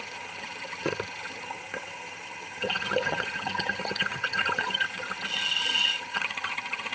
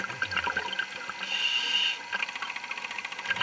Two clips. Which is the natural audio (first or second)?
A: second